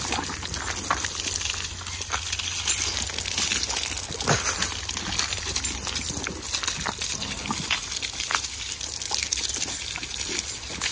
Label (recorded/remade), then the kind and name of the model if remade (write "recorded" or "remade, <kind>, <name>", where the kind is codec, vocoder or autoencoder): recorded